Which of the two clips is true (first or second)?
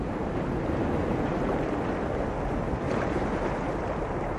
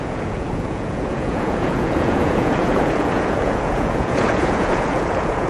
first